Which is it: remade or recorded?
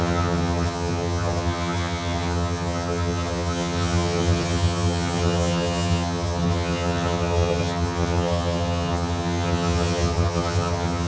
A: remade